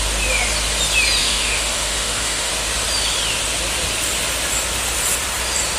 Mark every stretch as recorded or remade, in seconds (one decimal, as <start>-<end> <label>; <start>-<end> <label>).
0.0-1.2 recorded; 1.2-2.5 remade; 2.5-5.8 recorded